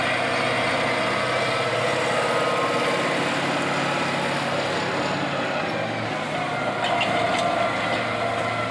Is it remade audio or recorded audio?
recorded